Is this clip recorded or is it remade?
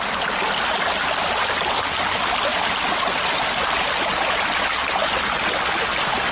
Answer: recorded